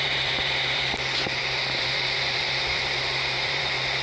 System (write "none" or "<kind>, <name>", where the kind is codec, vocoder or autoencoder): vocoder, BigVGAN v2